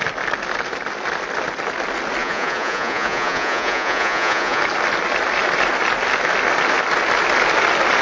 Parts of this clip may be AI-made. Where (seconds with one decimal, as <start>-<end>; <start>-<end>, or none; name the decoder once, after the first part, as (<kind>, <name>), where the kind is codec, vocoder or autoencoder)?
2.2-4.6 (vocoder, Vocos)